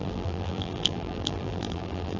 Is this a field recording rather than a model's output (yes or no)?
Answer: no